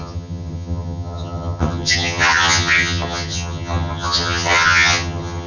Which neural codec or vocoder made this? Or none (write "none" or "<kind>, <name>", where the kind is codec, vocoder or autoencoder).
vocoder, HiFi-GAN